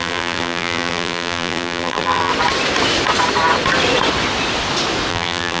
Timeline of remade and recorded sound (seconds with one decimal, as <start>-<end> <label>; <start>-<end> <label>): 0.0-2.3 remade; 2.3-5.1 recorded; 5.1-5.6 remade